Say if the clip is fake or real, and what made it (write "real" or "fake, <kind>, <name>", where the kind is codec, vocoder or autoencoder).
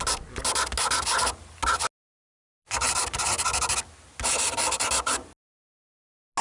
real